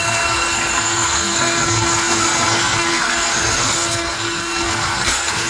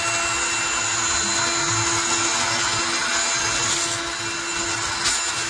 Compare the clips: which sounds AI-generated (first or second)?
first